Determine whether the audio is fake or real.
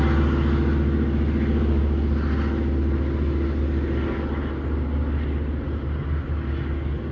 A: real